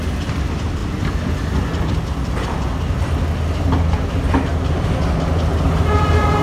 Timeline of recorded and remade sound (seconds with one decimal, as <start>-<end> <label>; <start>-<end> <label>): 0.0-6.4 recorded